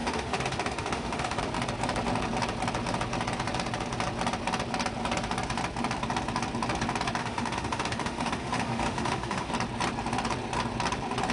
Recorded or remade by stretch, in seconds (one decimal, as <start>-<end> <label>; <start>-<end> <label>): 0.0-1.4 remade; 1.4-7.2 recorded; 7.2-9.5 remade; 9.5-11.3 recorded